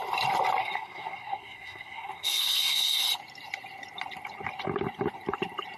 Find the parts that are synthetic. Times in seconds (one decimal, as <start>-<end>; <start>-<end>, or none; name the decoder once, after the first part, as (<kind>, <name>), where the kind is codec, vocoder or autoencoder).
0.6-3.0 (codec, SNAC)